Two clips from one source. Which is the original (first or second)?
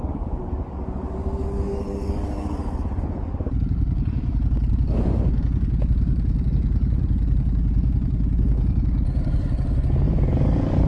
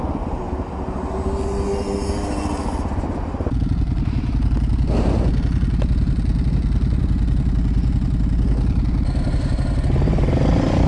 second